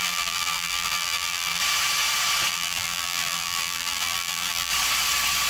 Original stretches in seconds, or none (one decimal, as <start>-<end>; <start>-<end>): 1.6-2.5; 4.7-5.5